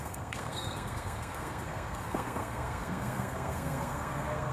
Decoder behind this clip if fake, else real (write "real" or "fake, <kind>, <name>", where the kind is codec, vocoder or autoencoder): fake, codec, SNAC